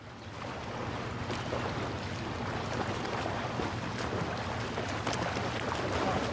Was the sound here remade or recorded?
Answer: recorded